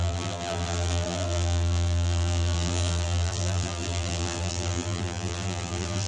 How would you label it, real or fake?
fake